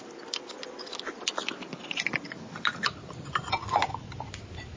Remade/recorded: recorded